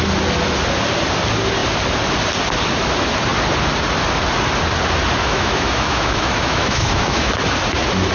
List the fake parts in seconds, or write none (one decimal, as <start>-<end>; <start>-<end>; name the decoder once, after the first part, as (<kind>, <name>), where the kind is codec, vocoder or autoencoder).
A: 5.2-7.3 (autoencoder, DAC-VAE)